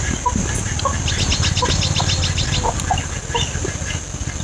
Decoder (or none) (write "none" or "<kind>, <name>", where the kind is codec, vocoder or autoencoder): none